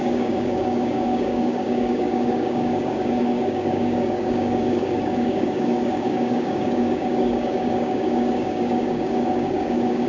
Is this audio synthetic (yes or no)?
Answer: yes